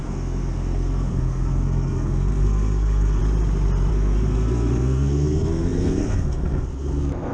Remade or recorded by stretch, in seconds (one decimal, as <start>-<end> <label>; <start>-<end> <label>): 0.0-3.2 remade; 3.2-3.9 recorded; 3.9-7.3 remade